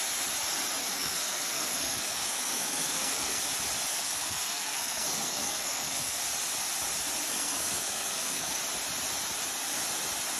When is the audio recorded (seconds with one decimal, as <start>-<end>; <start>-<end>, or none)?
0.0-0.8; 3.4-3.9; 6.2-7.2; 8.6-10.4